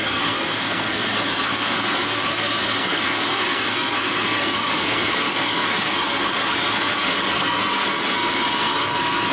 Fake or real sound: fake